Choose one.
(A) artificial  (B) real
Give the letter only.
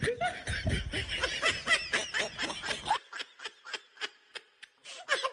B